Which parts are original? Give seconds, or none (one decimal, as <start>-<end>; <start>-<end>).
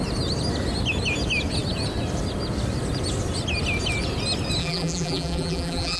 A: 0.0-4.6